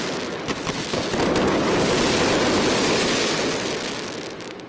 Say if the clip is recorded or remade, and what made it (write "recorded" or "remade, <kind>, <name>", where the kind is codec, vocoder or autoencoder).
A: recorded